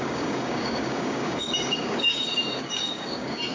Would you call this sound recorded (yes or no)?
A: no